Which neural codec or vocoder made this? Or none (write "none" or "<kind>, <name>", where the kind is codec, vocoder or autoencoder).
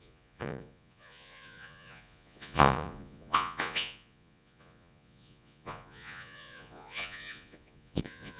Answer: vocoder, Vocos